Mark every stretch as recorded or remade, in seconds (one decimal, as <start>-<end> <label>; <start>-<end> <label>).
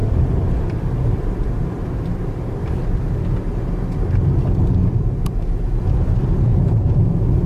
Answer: 0.0-3.2 remade; 3.2-4.8 recorded; 4.8-7.1 remade; 7.1-7.5 recorded